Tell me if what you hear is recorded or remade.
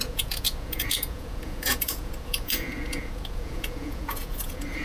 remade